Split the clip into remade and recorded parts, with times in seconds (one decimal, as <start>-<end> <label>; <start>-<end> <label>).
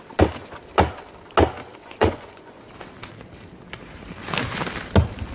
0.0-1.8 recorded; 1.8-2.6 remade; 2.6-5.3 recorded